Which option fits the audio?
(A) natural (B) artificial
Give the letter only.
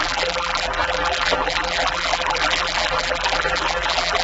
B